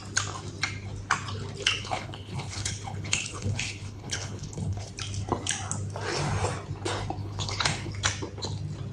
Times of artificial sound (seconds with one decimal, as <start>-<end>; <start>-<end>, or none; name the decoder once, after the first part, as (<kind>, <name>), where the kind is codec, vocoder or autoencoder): 1.8-4.9 (codec, HILCodec); 7.2-7.9